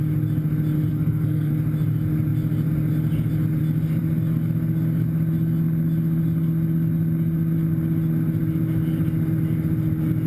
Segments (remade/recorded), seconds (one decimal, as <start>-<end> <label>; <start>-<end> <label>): 0.0-0.9 recorded; 0.9-1.5 remade; 1.5-10.3 recorded